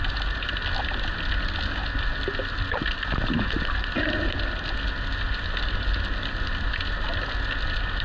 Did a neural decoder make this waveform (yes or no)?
no